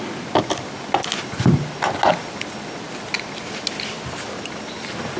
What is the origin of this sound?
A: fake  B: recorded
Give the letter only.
B